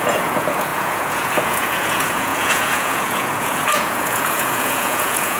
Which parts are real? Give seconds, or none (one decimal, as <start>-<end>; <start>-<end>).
none